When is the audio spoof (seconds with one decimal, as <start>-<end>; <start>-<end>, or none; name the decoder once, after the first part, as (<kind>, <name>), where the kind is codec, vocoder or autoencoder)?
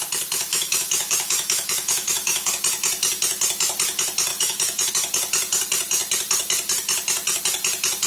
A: 0.5-2.5 (autoencoder, DAC-VAE); 4.3-4.9